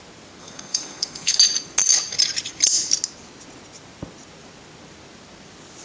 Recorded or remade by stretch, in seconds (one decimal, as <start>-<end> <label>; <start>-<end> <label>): 0.0-0.4 recorded; 0.4-1.4 remade; 1.4-5.8 recorded